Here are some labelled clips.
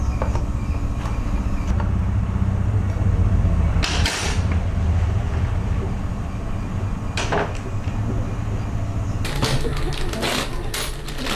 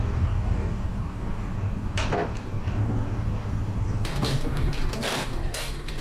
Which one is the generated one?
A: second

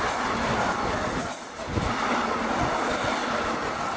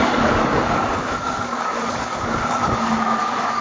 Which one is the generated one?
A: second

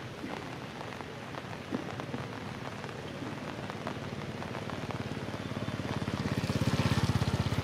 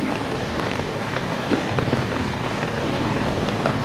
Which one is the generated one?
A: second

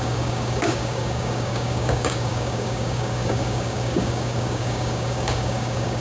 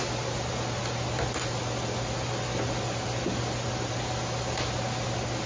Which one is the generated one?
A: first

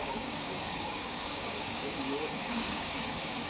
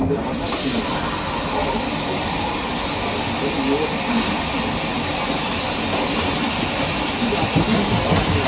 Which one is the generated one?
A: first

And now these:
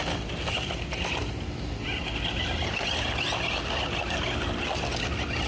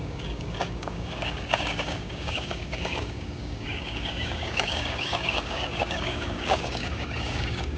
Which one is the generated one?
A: second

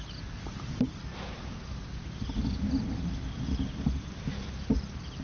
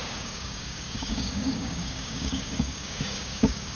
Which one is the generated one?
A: second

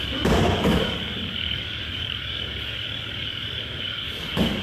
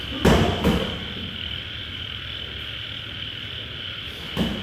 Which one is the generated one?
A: first